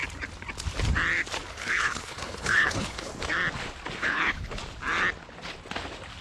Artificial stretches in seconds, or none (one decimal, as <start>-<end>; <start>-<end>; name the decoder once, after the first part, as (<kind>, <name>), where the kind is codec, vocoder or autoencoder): 1.5-3.1 (codec, HILCodec); 4.0-4.6